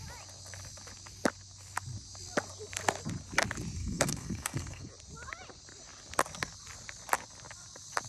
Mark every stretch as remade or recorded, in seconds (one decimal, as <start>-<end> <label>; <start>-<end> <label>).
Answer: 0.0-3.8 recorded; 3.8-4.9 remade; 4.9-8.1 recorded